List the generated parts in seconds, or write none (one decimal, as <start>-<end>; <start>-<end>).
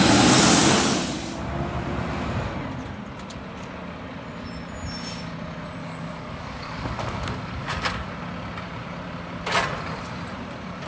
5.8-8.1